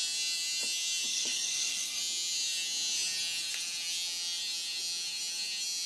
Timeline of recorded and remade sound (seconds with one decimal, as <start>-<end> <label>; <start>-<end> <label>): 0.0-1.1 recorded; 1.1-2.0 remade; 2.0-5.9 recorded